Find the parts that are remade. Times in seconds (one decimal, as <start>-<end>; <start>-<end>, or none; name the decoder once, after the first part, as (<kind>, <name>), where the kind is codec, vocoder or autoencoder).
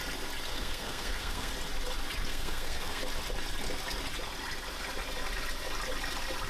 0.5-1.5 (codec, SNAC); 2.3-3.0